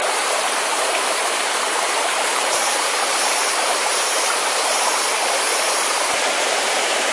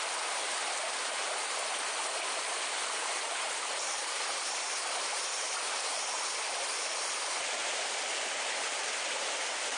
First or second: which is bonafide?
second